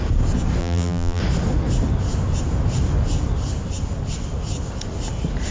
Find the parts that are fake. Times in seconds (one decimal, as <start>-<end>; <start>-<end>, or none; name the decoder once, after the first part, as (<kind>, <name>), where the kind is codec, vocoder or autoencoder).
0.6-1.2 (vocoder, BigVGAN v2)